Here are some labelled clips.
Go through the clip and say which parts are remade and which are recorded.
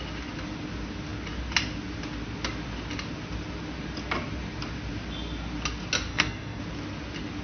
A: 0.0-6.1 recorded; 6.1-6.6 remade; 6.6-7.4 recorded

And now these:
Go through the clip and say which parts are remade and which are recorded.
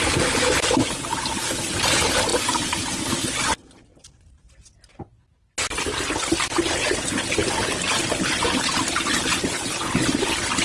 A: 0.0-10.6 recorded